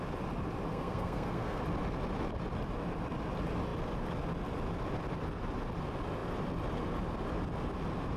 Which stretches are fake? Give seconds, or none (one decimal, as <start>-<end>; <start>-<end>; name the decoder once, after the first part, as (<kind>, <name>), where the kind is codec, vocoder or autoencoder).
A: 0.7-1.6 (codec, SNAC)